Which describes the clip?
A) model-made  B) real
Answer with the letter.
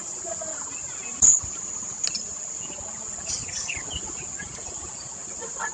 B